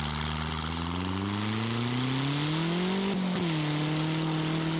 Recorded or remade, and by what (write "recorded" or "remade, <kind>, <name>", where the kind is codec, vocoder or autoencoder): recorded